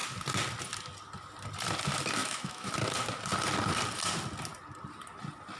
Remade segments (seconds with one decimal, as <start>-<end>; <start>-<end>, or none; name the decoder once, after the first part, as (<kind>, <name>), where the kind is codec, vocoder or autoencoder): 2.2-2.7 (autoencoder, DAC-VAE)